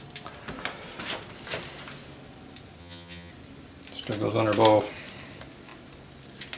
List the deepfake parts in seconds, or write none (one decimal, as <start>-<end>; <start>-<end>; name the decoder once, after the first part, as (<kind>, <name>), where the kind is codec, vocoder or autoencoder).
2.8-3.3 (vocoder, HiFi-GAN)